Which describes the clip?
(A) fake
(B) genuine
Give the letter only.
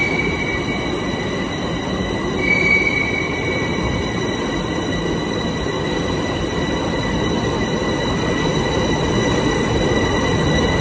B